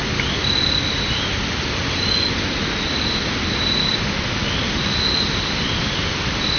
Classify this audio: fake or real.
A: real